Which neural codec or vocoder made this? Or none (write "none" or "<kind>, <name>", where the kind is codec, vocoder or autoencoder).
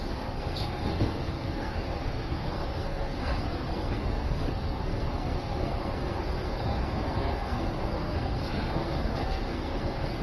codec, SNAC